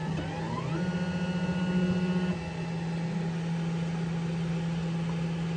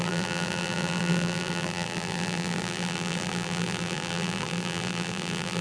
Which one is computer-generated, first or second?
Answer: second